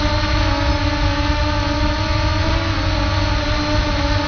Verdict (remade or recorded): recorded